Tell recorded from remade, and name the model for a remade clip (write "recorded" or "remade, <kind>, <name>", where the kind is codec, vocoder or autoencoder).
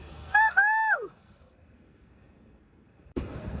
remade, codec, SNAC